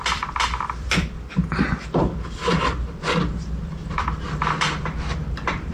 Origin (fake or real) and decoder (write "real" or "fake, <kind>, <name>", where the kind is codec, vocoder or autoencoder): fake, vocoder, BigVGAN v2